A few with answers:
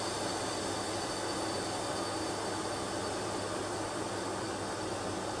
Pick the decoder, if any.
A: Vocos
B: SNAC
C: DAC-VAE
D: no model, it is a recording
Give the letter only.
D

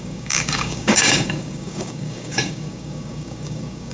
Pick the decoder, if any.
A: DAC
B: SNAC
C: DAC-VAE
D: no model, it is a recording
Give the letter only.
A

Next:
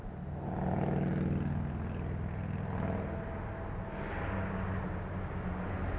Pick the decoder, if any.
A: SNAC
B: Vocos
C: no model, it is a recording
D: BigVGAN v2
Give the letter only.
C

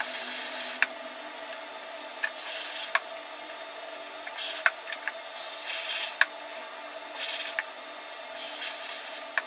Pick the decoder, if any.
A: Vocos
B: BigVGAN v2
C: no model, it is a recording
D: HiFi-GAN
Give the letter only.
C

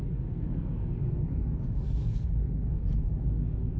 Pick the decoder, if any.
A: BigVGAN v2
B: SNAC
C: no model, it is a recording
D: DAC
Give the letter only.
B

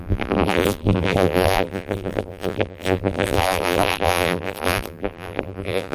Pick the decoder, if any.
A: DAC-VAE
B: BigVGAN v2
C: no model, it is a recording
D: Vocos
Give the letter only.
B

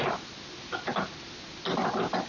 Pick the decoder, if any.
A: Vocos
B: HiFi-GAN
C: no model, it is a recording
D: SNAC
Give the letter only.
C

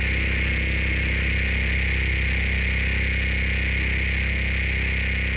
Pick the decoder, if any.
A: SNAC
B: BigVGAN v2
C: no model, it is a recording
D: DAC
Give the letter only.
C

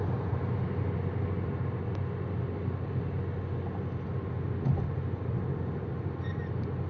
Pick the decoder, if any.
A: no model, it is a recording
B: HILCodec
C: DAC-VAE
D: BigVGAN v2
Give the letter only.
A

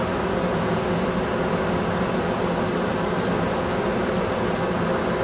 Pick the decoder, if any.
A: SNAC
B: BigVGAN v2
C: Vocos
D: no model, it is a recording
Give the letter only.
D